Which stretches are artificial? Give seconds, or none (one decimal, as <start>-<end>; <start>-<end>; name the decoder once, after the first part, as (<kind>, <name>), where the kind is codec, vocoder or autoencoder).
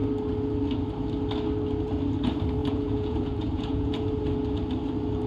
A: 2.6-4.2 (vocoder, Vocos)